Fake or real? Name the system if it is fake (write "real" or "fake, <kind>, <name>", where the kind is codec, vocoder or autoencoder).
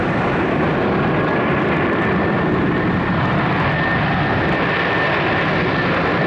fake, vocoder, BigVGAN v2